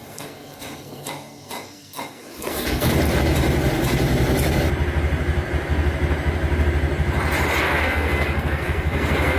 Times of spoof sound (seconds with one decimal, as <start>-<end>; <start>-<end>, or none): 0.0-2.9; 7.6-9.4